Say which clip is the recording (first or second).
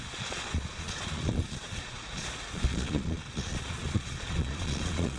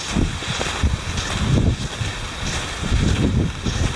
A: second